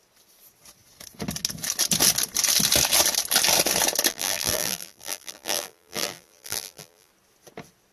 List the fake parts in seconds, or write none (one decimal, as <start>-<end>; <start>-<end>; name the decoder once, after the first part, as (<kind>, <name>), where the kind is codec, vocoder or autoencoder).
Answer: 4.1-7.1 (vocoder, BigVGAN v2)